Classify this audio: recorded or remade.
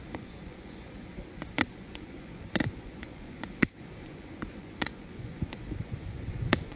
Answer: remade